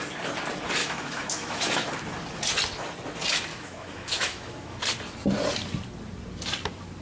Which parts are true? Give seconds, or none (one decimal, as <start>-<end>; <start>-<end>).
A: 0.0-0.8; 1.9-3.5; 4.8-7.0